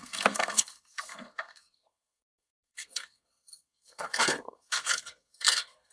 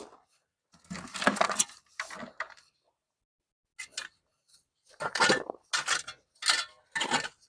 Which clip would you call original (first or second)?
second